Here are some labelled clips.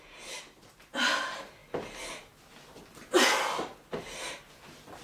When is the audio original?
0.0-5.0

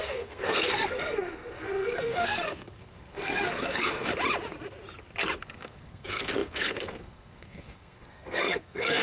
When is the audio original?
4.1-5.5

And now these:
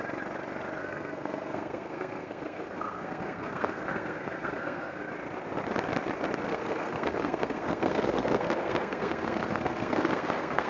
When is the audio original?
0.0-0.8; 5.0-6.5

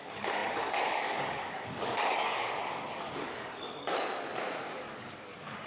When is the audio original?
4.3-4.9